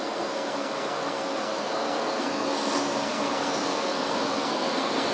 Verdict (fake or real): fake